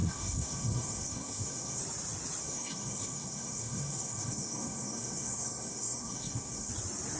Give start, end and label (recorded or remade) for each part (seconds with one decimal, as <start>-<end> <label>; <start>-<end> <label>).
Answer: 0.0-1.8 remade; 1.8-2.4 recorded; 2.4-6.7 remade; 6.7-7.2 recorded